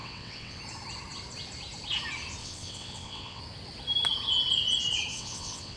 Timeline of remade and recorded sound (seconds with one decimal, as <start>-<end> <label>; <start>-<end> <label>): 0.0-0.6 remade; 0.6-2.4 recorded; 2.4-3.4 remade; 3.4-5.1 recorded; 5.1-5.8 remade